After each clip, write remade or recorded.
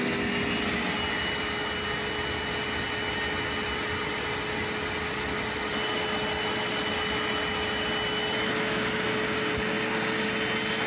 recorded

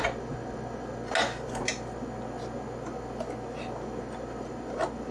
recorded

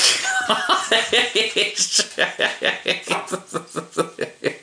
recorded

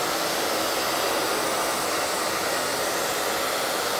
recorded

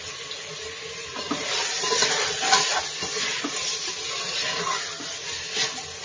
recorded